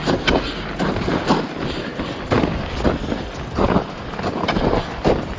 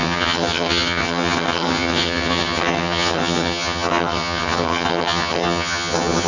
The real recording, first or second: first